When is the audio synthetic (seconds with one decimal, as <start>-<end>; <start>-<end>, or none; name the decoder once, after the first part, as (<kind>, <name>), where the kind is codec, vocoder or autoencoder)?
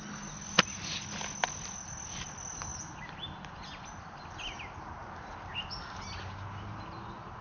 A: none